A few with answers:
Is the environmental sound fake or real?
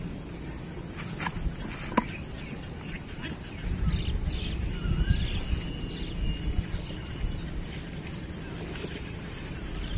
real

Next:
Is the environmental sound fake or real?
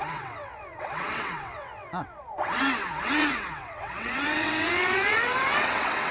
fake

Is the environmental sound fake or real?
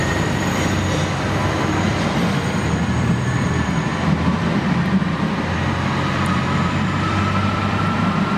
fake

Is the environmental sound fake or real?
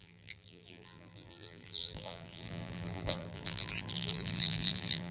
fake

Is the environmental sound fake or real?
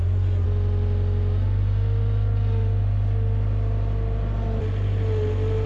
real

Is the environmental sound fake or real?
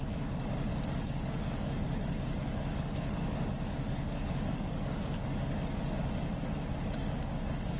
fake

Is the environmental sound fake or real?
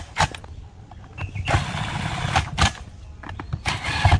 real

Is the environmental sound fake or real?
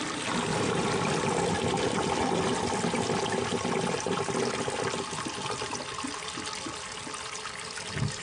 real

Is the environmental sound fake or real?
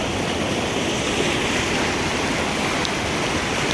real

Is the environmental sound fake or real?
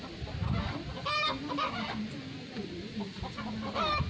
real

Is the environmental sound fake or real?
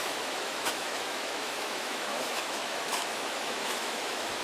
fake